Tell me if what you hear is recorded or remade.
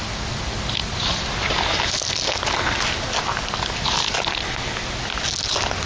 recorded